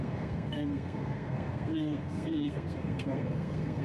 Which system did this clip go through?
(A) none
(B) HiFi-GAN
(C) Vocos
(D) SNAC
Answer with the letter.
D